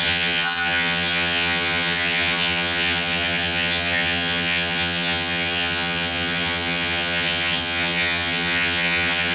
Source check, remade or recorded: remade